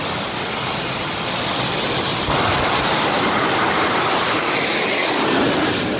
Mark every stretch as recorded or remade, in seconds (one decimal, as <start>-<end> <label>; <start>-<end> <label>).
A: 0.0-2.1 recorded; 2.1-6.0 remade

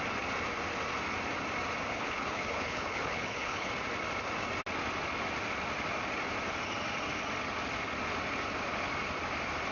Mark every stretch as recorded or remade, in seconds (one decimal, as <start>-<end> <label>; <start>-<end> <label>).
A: 0.0-1.9 recorded; 1.9-3.7 remade; 3.7-9.7 recorded

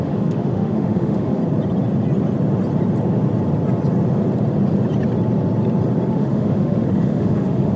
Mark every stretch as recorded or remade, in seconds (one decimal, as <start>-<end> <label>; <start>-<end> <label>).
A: 0.0-1.4 remade; 1.4-6.1 recorded; 6.1-7.8 remade

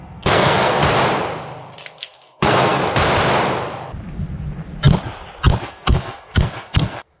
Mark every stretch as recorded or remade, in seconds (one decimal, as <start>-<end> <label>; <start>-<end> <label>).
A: 0.0-0.8 remade; 0.8-2.0 recorded; 2.0-2.8 remade; 2.8-5.6 recorded; 5.6-7.2 remade

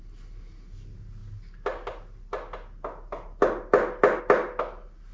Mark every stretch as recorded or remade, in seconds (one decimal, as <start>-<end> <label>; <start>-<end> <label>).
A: 0.0-5.1 recorded

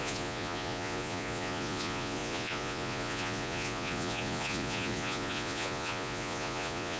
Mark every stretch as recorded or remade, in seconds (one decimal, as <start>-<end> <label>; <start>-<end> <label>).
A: 0.0-7.0 remade